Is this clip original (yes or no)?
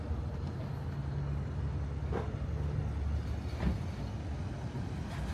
yes